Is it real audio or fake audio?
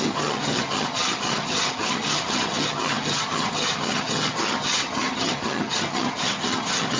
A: fake